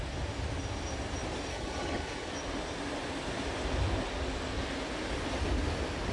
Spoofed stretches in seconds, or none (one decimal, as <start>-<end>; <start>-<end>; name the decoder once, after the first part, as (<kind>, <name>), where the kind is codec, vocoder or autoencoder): 1.5-2.3 (codec, HILCodec)